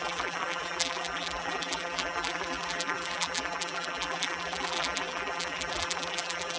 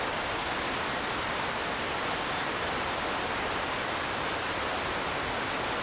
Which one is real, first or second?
second